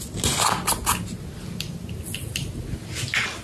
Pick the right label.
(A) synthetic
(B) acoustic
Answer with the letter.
B